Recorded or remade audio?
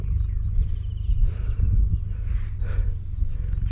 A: recorded